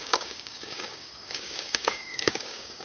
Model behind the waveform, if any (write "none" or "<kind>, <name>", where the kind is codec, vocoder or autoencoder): codec, DAC